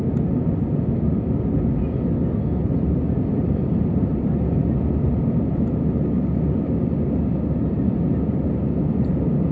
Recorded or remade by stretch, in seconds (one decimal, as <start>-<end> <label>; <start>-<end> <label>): 0.0-9.5 recorded